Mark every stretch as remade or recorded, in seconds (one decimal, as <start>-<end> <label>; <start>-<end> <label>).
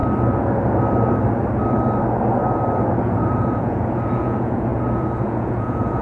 0.0-3.0 recorded; 3.0-6.0 remade